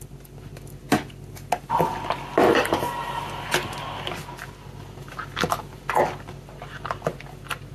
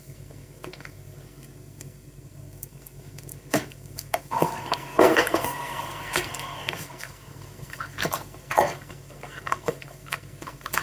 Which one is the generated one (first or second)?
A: second